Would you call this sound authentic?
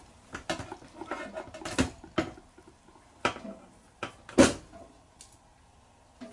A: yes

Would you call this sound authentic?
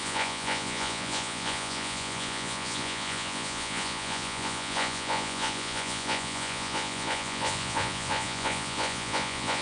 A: no